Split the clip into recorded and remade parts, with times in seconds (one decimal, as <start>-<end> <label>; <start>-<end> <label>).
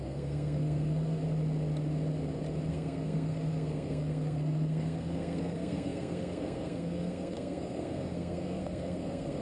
0.0-1.2 remade; 1.2-2.7 recorded; 2.7-9.4 remade